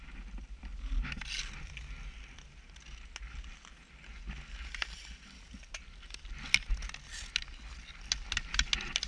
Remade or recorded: recorded